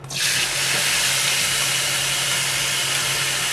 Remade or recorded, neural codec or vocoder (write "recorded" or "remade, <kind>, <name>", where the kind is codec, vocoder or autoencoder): recorded